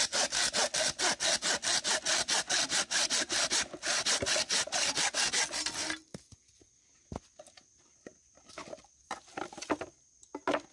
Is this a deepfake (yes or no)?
no